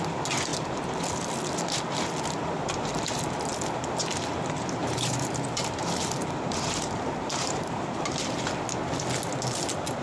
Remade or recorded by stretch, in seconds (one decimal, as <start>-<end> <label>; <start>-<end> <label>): 0.0-4.8 recorded; 4.8-8.5 remade; 8.5-10.0 recorded